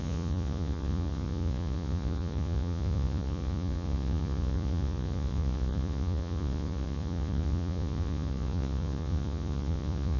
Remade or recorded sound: remade